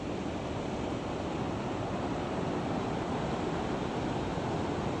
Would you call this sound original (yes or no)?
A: yes